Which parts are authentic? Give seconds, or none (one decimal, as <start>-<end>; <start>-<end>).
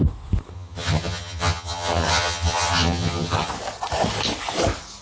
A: 0.0-0.5; 3.5-5.0